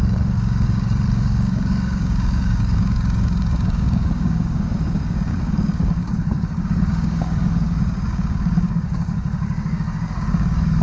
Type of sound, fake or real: fake